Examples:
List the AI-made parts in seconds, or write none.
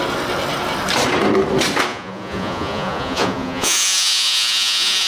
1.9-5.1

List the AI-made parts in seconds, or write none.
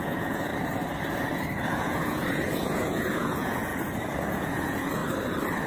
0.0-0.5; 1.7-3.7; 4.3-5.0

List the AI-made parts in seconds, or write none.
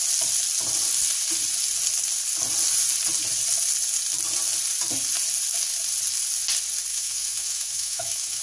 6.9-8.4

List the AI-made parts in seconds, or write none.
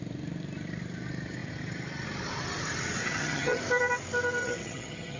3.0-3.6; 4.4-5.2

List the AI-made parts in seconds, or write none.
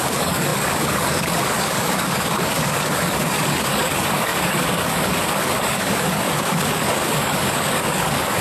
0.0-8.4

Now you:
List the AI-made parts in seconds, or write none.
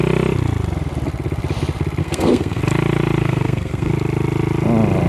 2.0-2.6; 3.2-3.9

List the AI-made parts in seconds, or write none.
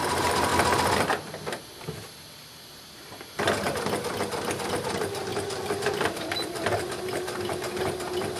0.0-0.5; 4.7-5.3; 5.8-8.4